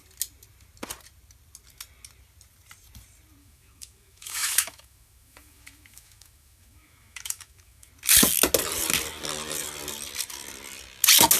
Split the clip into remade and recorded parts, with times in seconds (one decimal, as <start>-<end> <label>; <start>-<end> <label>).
0.0-3.4 recorded; 3.4-7.9 remade; 7.9-11.4 recorded